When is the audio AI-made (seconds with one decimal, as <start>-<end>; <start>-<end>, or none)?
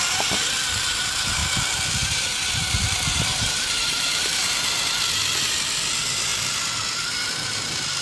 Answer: 3.3-4.4